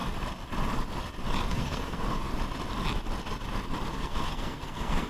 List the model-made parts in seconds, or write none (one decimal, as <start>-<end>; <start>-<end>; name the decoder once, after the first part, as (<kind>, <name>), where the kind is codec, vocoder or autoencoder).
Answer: 1.5-2.3 (codec, SNAC); 3.9-5.1

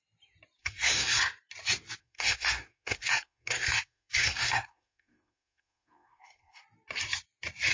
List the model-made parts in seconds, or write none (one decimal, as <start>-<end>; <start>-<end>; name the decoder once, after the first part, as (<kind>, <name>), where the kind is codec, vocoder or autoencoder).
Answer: 0.6-1.2 (codec, SNAC); 2.0-6.6

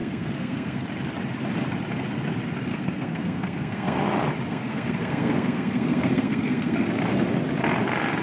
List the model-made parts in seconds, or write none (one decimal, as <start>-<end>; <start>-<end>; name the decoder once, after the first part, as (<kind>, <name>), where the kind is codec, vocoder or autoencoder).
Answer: 0.0-0.8 (codec, SNAC); 2.7-4.0; 4.5-6.9

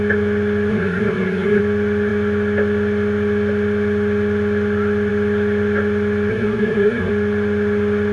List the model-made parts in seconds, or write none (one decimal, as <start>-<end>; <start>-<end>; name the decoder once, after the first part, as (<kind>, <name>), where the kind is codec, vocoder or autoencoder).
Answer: 0.7-1.6 (codec, SNAC); 6.3-7.1

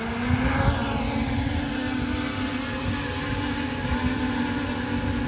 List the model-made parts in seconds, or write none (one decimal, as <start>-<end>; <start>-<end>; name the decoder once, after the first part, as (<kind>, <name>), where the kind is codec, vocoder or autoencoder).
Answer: none

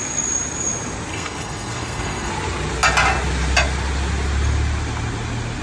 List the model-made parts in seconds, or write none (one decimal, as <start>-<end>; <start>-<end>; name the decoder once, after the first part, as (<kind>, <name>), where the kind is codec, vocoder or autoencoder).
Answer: 1.1-2.3 (codec, SNAC)